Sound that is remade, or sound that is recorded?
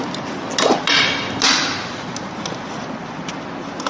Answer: recorded